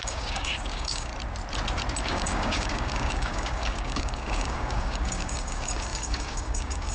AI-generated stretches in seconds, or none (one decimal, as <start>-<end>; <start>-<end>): 0.0-1.1; 2.0-6.9